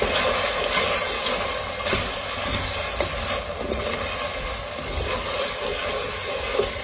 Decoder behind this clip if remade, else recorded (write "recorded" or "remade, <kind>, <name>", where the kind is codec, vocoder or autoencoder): recorded